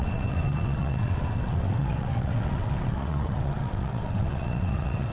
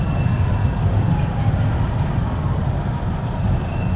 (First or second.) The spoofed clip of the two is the first